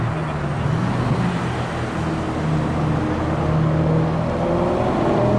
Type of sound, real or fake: real